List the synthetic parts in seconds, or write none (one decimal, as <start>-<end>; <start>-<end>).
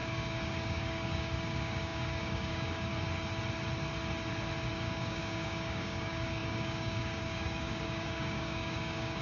0.0-2.9; 4.7-9.2